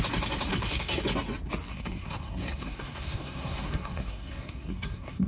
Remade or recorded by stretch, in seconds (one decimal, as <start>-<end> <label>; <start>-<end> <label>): 0.0-0.5 recorded; 0.5-1.0 remade; 1.0-1.7 recorded; 1.7-5.3 remade